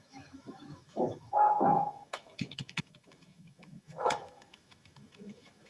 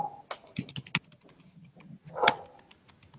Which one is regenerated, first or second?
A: first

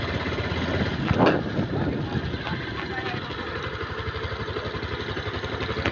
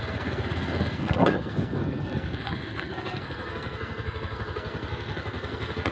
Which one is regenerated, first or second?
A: second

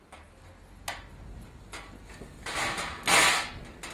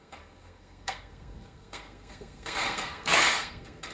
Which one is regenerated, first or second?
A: second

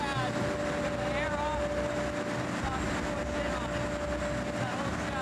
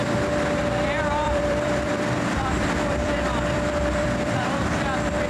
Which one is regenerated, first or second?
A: second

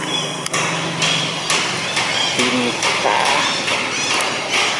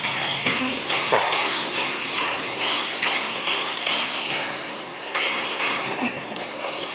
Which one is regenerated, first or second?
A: second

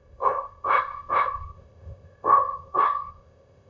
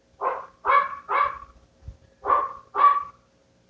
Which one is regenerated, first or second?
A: first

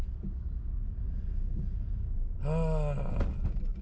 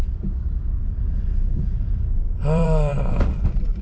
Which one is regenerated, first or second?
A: second